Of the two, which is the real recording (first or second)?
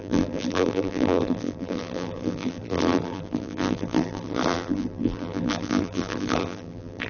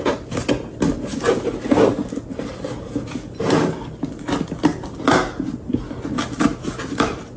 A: second